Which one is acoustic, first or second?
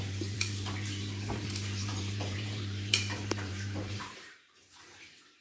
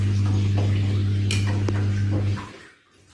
second